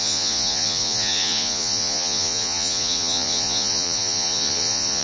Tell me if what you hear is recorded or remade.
remade